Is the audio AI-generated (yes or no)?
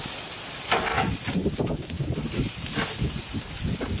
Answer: no